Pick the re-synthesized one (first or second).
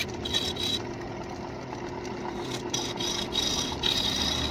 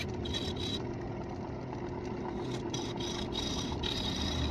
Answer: second